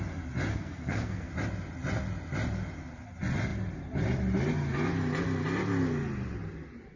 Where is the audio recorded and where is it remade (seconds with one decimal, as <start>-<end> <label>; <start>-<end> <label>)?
0.0-0.5 recorded; 0.5-1.3 remade; 1.3-7.0 recorded